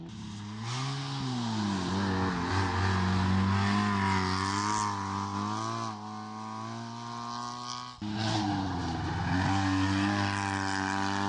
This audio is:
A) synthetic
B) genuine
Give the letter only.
B